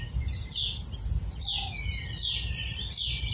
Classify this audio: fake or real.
real